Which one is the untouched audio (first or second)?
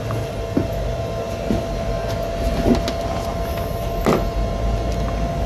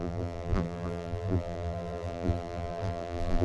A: first